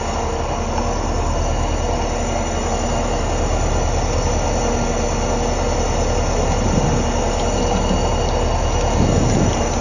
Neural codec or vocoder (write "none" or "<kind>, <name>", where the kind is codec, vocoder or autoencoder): none